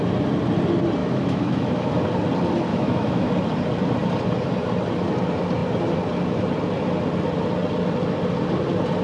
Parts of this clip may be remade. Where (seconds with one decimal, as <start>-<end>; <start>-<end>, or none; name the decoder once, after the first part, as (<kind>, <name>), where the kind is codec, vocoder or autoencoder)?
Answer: 1.0-1.9 (autoencoder, DAC-VAE); 2.7-3.3